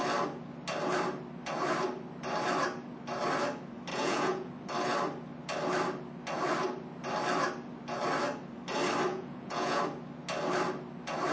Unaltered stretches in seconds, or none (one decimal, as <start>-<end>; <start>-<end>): 0.0-3.9; 4.5-9.1; 9.8-11.3